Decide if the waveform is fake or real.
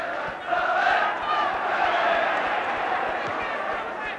fake